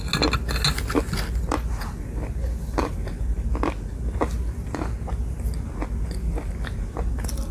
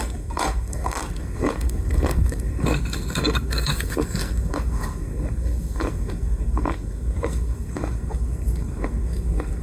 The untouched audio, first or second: first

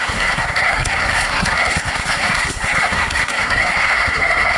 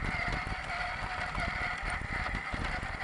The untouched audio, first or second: second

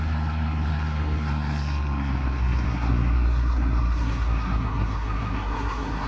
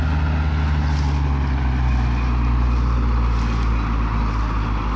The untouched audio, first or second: second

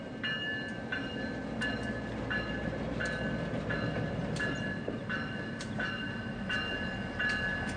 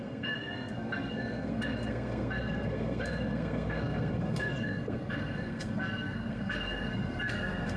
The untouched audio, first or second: first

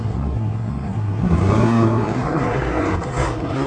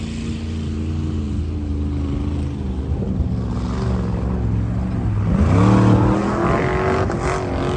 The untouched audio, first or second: second